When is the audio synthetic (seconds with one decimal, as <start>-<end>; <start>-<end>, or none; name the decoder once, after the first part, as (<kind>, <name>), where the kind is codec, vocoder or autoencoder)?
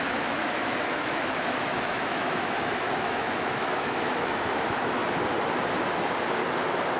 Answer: 0.0-5.0 (autoencoder, DAC-VAE)